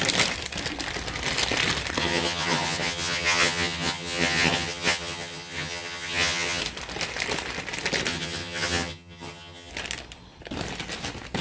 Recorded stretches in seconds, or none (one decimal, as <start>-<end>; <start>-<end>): 0.0-2.0; 6.6-8.1; 9.7-11.4